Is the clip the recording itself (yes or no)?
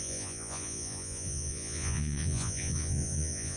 no